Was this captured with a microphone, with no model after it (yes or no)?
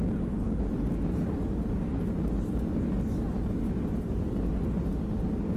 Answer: yes